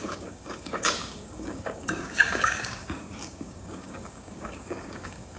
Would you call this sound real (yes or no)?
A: no